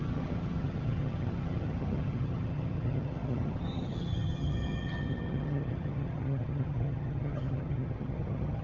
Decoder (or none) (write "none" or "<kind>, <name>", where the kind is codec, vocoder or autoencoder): vocoder, HiFi-GAN